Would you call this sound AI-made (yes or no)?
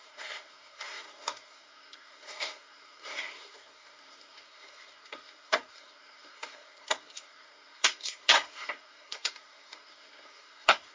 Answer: yes